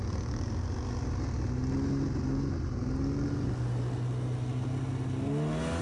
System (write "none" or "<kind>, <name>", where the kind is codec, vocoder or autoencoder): none